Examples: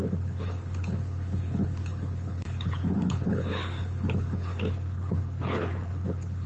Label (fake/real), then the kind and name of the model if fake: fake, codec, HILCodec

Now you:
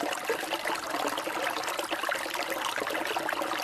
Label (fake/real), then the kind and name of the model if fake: real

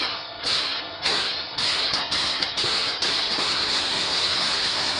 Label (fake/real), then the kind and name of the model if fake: fake, codec, SNAC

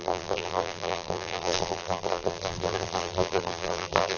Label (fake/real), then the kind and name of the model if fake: fake, vocoder, BigVGAN v2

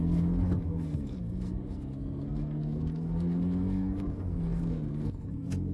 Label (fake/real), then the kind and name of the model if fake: fake, codec, SNAC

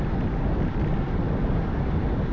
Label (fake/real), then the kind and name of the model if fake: real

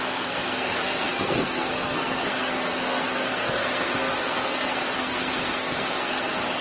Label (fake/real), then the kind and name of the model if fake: fake, codec, SNAC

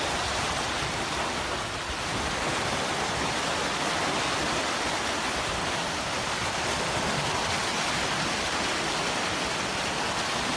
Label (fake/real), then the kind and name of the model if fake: real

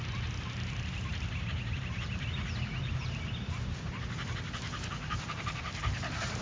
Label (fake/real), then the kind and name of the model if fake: fake, vocoder, BigVGAN v2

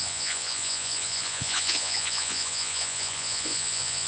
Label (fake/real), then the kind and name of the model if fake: fake, vocoder, Vocos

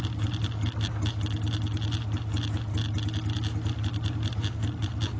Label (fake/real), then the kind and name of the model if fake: real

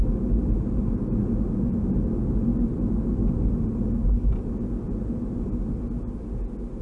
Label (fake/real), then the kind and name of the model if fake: real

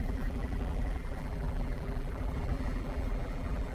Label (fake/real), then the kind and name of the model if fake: fake, vocoder, BigVGAN v2